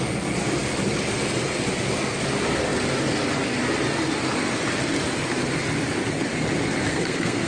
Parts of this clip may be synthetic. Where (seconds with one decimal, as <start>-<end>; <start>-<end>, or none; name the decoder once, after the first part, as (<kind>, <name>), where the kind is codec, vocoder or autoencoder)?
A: 6.9-7.5 (codec, SNAC)